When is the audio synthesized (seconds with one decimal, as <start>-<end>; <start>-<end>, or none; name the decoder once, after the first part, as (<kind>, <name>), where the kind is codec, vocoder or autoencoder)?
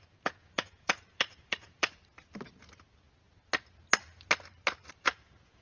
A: 0.0-2.0 (vocoder, Vocos); 4.9-5.6